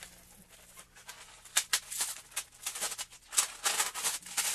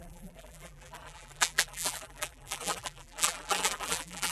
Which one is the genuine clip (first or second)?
first